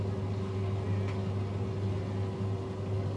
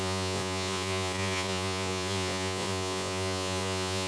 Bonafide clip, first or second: first